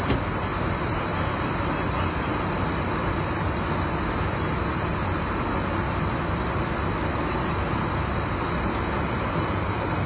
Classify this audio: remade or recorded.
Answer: recorded